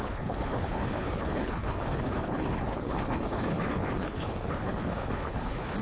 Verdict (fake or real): fake